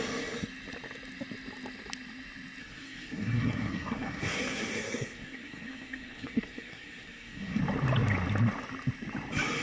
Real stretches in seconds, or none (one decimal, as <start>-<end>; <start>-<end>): 0.0-2.6; 7.6-9.6